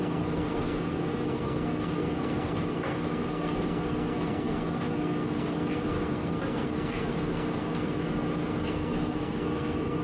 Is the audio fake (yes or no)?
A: yes